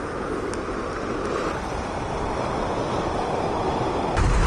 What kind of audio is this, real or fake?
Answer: real